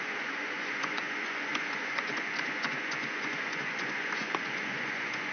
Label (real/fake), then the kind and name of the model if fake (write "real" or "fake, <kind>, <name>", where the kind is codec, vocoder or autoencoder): fake, vocoder, Vocos